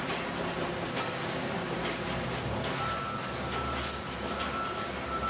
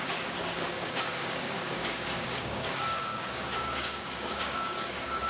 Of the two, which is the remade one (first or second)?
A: second